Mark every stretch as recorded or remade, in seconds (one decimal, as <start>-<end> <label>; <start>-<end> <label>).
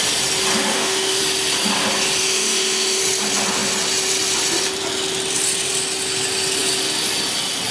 0.0-0.7 recorded; 0.7-1.2 remade; 1.2-2.2 recorded; 2.2-3.0 remade; 3.0-7.7 recorded